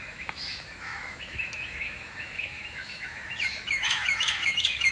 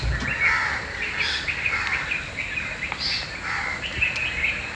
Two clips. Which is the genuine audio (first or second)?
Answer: second